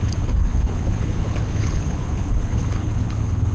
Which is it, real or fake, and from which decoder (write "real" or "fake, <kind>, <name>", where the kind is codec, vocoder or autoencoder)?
fake, codec, HILCodec